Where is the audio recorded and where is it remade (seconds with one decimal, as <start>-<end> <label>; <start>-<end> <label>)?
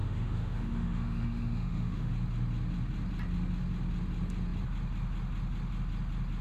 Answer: 0.0-2.1 remade; 2.1-6.4 recorded